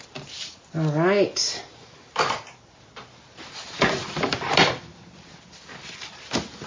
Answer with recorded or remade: recorded